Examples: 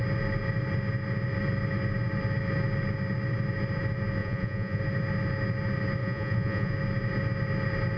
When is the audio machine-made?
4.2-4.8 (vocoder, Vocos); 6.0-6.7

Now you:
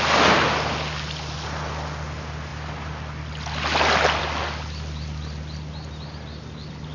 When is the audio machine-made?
none